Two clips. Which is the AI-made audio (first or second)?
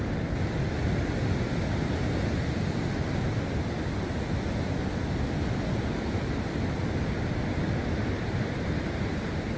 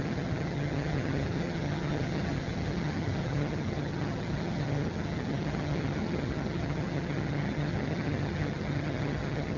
second